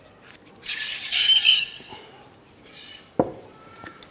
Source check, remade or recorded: recorded